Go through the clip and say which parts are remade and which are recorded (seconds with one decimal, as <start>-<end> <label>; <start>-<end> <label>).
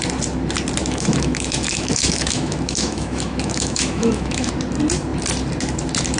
0.0-0.8 recorded; 0.8-4.5 remade; 4.5-6.2 recorded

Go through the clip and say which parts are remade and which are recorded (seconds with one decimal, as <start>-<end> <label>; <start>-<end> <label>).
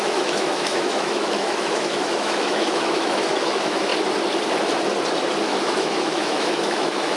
0.0-3.9 remade; 3.9-5.4 recorded; 5.4-7.2 remade